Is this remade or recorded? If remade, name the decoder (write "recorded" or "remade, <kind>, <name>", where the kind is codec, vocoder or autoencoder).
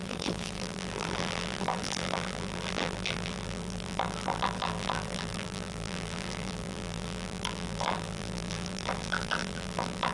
remade, vocoder, BigVGAN v2